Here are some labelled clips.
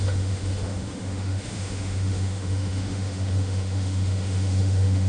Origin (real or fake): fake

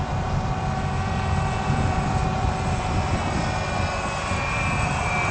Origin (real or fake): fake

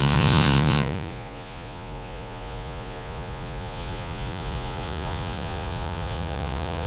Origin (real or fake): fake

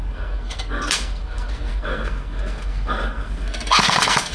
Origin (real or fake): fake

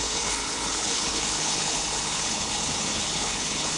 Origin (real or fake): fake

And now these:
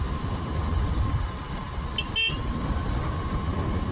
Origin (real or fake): real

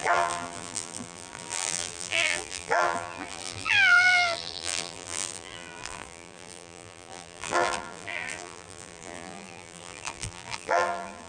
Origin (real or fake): fake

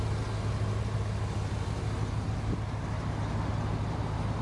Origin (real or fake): real